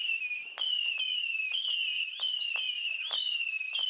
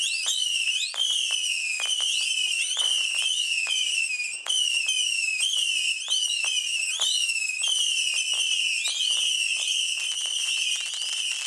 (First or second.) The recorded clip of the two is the second